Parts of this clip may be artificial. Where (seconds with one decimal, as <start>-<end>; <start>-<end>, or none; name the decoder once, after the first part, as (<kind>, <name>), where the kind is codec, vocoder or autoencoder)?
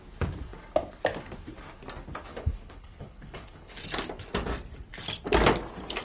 2.3-3.8 (codec, HILCodec)